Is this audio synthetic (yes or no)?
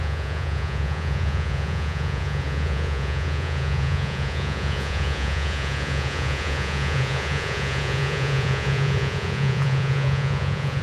yes